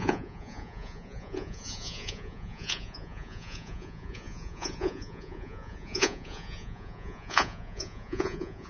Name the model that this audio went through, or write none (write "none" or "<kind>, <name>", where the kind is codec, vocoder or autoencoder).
vocoder, Vocos